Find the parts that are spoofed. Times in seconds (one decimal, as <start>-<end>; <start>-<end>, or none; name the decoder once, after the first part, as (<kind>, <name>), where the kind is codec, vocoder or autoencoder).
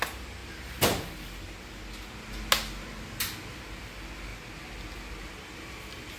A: none